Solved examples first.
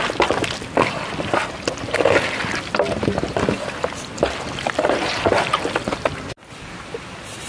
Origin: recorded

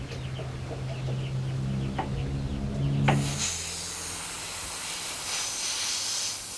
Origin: recorded